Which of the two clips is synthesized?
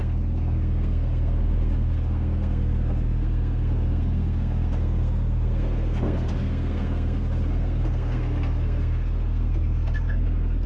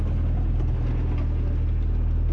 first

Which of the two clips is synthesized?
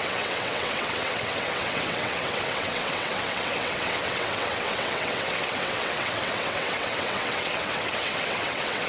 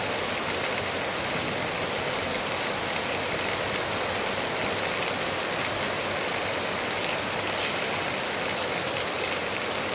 first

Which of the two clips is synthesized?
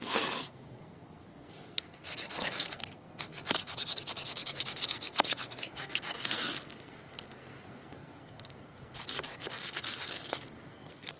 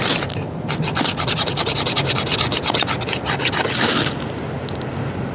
first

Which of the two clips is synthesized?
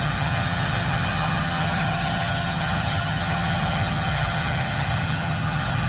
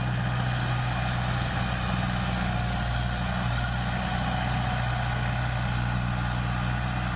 first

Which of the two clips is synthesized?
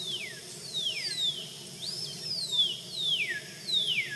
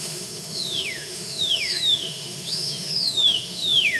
second